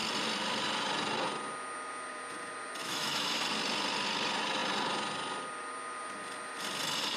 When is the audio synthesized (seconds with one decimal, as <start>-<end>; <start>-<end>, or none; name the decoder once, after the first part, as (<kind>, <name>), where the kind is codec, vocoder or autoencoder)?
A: 2.8-3.4 (autoencoder, DAC-VAE)

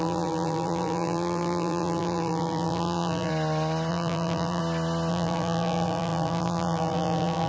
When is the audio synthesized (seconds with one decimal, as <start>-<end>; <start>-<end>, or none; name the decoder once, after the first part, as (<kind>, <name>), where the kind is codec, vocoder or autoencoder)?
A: 0.0-3.3 (vocoder, BigVGAN v2); 3.9-4.6; 5.1-7.5

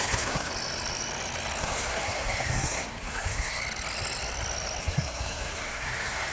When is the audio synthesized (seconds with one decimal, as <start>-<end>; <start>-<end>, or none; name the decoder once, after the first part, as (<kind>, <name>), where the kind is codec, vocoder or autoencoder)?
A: 0.0-0.5 (codec, SNAC); 1.6-3.6; 4.8-6.3